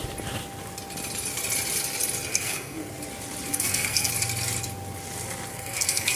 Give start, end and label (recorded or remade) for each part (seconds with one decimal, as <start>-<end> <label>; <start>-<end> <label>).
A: 0.0-2.3 recorded; 2.3-2.9 remade; 2.9-3.5 recorded; 3.5-4.1 remade; 4.1-5.5 recorded; 5.5-6.2 remade